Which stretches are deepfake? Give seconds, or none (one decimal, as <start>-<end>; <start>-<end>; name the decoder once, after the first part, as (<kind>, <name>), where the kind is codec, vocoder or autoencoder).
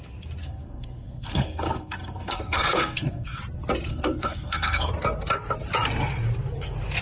0.4-3.4 (codec, SNAC); 3.9-4.9